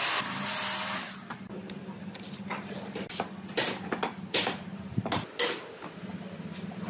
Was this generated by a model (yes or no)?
no